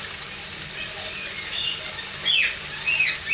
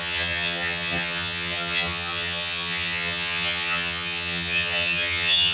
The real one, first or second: first